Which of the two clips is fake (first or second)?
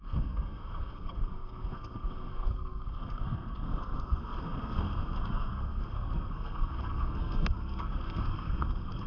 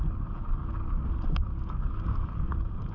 first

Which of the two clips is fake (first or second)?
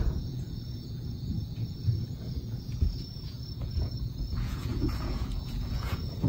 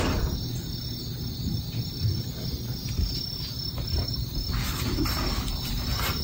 first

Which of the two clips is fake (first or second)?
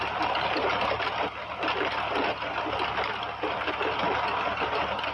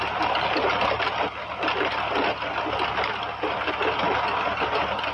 first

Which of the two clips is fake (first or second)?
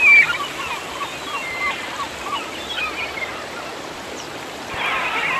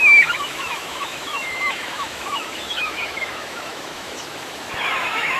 second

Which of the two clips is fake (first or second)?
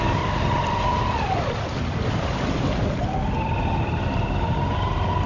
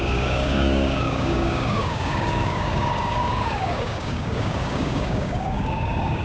second